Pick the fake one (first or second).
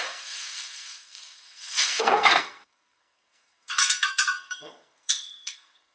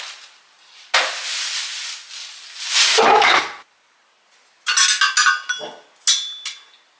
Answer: first